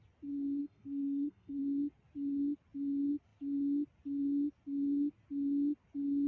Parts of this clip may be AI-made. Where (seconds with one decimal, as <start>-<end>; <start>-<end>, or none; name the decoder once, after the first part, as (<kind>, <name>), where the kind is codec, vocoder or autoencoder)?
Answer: 0.6-1.6 (codec, SNAC)